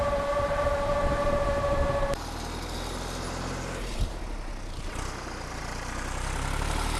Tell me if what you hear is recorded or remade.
recorded